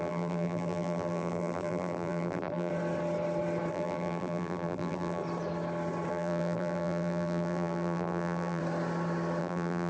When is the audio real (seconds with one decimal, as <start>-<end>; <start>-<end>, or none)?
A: 2.7-3.7; 5.2-6.1; 8.6-9.4